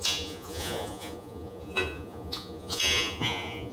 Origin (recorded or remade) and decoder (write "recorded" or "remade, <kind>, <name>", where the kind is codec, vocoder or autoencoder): remade, vocoder, Vocos